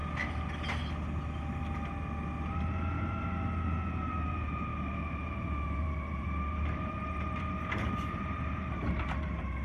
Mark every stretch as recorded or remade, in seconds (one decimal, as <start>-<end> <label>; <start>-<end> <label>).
0.0-4.0 recorded; 4.0-9.6 remade